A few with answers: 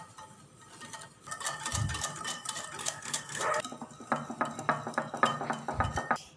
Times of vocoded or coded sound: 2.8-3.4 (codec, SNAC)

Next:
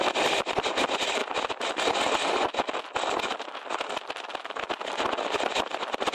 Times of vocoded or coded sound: none

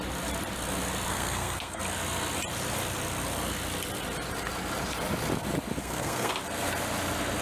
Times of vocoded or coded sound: 1.1-1.8 (codec, SNAC); 5.8-6.3

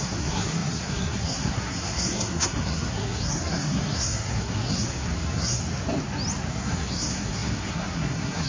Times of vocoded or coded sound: 0.0-5.6 (codec, SNAC); 6.5-8.5

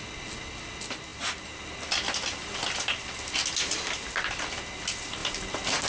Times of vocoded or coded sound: none

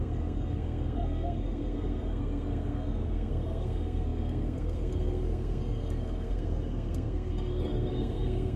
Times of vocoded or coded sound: 0.0-8.6 (codec, SNAC)

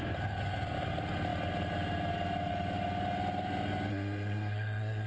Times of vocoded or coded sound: 3.9-5.1 (codec, SNAC)